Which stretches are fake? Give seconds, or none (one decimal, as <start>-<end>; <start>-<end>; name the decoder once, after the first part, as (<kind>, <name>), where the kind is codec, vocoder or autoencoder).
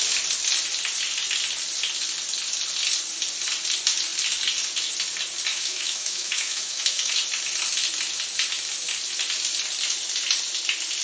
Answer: 5.5-7.2 (autoencoder, DAC-VAE)